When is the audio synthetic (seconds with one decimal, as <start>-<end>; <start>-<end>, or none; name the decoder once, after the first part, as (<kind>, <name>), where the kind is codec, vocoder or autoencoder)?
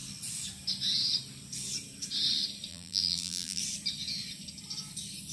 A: 2.7-3.6 (vocoder, BigVGAN v2)